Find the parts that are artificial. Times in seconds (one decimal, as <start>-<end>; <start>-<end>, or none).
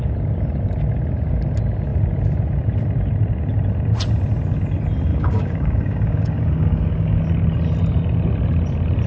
5.1-7.2